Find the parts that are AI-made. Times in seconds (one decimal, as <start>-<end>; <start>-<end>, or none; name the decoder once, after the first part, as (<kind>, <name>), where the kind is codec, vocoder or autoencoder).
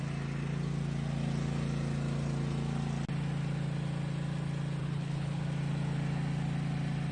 4.8-5.4 (codec, HILCodec)